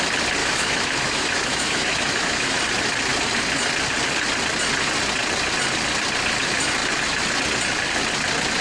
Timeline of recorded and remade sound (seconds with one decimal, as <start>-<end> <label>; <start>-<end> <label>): 0.0-0.4 recorded; 0.4-2.6 remade; 2.6-8.6 recorded